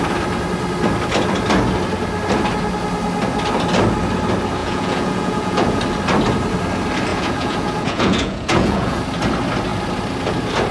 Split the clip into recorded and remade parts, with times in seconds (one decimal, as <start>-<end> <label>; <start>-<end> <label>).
0.0-4.6 recorded; 4.6-5.8 remade; 5.8-7.1 recorded; 7.1-9.0 remade; 9.0-10.7 recorded